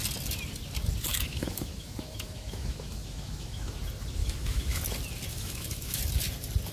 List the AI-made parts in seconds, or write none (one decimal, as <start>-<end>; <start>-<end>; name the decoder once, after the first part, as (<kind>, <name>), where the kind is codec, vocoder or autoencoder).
1.1-3.8 (autoencoder, DAC-VAE); 4.2-4.8; 5.3-6.0